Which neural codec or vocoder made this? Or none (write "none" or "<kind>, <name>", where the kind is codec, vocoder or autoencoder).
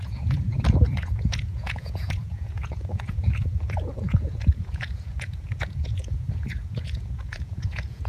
vocoder, Vocos